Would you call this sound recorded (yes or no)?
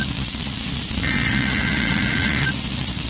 no